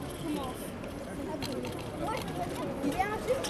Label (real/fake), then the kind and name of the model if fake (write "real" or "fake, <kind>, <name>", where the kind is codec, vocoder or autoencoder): real